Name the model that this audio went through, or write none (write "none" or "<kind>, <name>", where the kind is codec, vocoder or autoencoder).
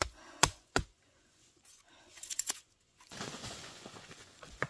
vocoder, Vocos